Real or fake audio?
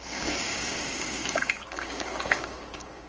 fake